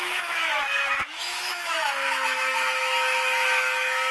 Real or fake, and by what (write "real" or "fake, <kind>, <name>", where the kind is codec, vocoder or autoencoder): fake, autoencoder, DAC-VAE